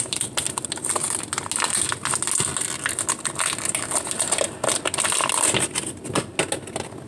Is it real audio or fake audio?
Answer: real